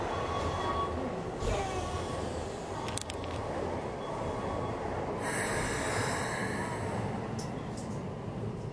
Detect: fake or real real